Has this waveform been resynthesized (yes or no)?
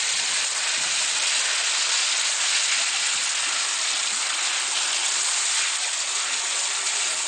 no